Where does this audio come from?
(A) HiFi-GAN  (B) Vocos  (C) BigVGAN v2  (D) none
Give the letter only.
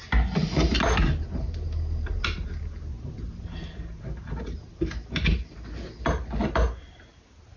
D